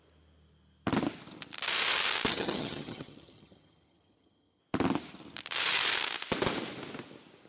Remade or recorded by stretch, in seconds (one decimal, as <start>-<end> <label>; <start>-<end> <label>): 0.0-2.3 recorded; 2.3-4.6 remade; 4.6-7.5 recorded